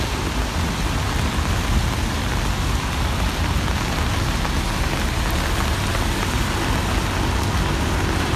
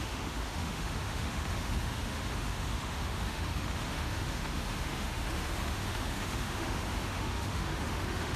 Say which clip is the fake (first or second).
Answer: second